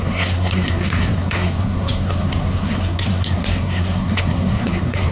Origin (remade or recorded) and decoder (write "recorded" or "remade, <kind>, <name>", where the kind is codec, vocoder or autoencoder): remade, codec, SNAC